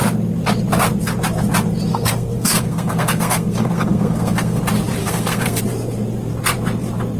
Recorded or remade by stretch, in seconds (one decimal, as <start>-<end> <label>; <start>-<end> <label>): 0.0-1.9 recorded; 1.9-4.6 remade; 4.6-5.0 recorded; 5.0-5.6 remade; 5.6-7.2 recorded